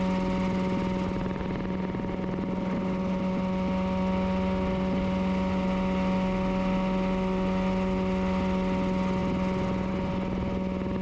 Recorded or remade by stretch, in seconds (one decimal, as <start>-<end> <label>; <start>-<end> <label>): 0.0-11.0 recorded